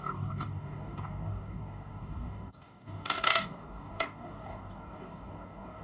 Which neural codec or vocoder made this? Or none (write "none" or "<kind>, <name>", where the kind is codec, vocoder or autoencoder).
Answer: codec, DAC